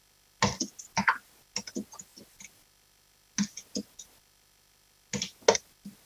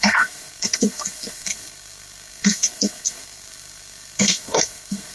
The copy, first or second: second